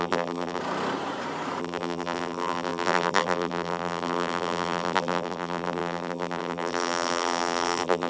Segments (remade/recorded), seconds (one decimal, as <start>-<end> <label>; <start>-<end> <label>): 0.0-0.6 remade; 0.6-1.6 recorded; 1.6-8.1 remade